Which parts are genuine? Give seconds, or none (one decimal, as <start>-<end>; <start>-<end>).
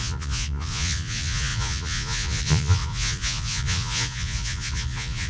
none